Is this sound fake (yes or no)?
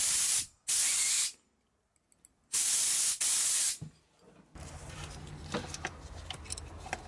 no